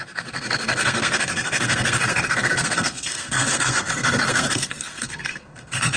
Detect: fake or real fake